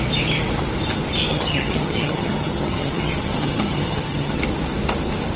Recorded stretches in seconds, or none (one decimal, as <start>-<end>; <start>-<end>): 0.0-1.3; 4.4-5.4